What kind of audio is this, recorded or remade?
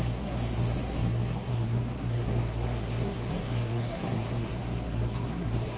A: remade